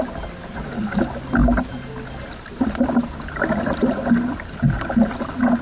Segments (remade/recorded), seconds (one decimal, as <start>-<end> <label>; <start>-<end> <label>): 0.0-5.6 recorded

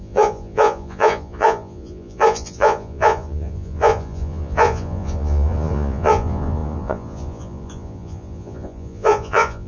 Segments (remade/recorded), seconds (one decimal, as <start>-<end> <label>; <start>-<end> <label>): 0.0-9.7 remade

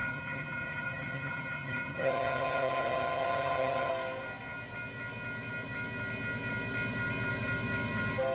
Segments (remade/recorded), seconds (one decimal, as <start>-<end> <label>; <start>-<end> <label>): 0.0-3.9 remade; 3.9-8.3 recorded

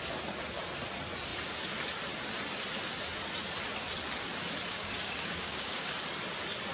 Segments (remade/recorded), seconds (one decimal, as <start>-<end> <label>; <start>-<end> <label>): 0.0-4.7 recorded; 4.7-5.9 remade; 5.9-6.7 recorded

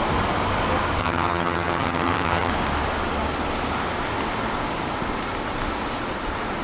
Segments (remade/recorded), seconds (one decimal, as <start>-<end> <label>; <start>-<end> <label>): 0.0-1.0 recorded; 1.0-2.5 remade; 2.5-6.6 recorded

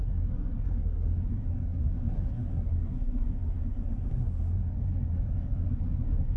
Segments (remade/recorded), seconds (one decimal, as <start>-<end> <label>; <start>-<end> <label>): 0.0-6.4 remade

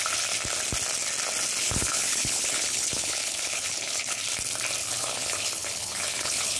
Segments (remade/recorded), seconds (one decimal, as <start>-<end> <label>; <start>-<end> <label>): 0.0-1.6 recorded; 1.6-4.2 remade; 4.2-4.8 recorded; 4.8-6.6 remade

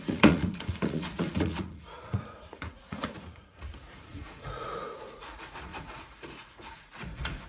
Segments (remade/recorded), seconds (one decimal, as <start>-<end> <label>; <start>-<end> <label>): 0.0-7.5 remade